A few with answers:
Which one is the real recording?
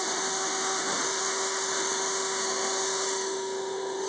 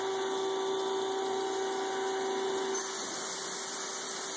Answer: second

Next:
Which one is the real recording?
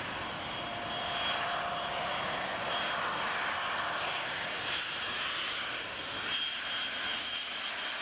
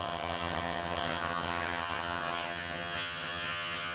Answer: first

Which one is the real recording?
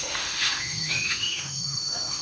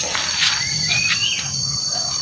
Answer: second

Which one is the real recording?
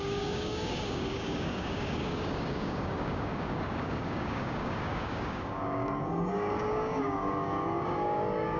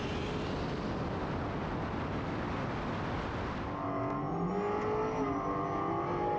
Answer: second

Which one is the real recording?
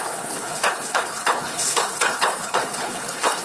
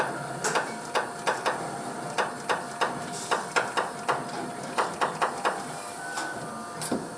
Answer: second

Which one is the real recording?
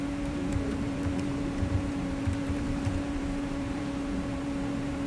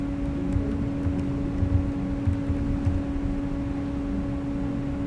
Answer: second